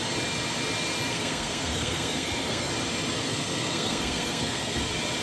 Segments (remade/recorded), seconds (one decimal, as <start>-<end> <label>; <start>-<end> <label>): 0.0-1.1 recorded; 1.1-2.7 remade; 2.7-3.3 recorded; 3.3-4.8 remade; 4.8-5.2 recorded